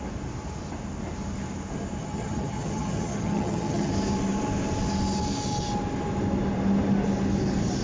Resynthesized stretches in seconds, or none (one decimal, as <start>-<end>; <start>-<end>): 2.0-3.9